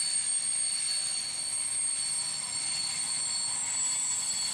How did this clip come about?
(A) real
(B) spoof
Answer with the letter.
A